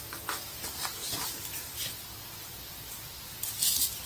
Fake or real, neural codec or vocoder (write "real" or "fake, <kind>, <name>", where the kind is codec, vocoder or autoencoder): real